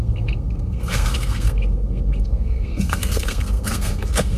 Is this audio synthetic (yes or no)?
yes